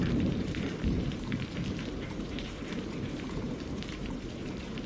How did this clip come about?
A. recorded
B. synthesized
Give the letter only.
B